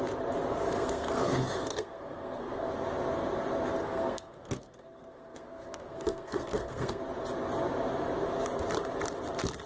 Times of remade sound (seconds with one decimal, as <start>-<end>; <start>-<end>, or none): 0.5-2.7; 3.8-7.0